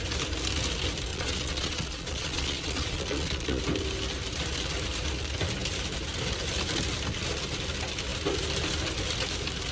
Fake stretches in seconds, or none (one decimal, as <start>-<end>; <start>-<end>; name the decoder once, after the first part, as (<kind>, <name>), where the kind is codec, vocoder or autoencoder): 1.1-3.6 (vocoder, Vocos)